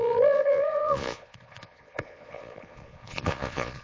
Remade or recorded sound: remade